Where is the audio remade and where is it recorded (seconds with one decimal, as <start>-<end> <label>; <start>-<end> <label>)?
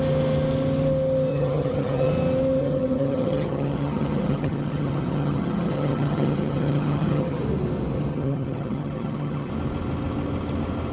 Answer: 0.0-1.3 recorded; 1.3-2.1 remade; 2.1-2.6 recorded; 2.6-7.4 remade; 7.4-8.1 recorded; 8.1-9.5 remade; 9.5-10.9 recorded